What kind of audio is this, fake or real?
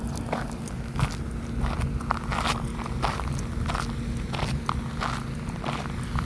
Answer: real